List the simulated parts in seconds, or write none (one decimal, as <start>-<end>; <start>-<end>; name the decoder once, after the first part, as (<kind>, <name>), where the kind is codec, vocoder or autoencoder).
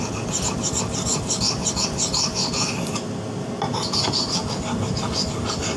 none